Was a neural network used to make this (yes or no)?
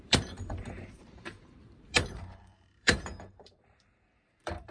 yes